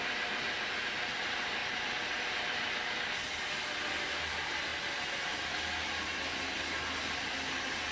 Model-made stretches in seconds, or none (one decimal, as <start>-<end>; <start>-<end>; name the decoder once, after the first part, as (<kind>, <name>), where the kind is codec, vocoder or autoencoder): none